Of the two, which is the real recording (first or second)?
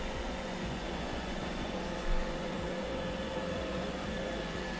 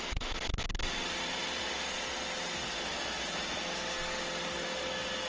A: second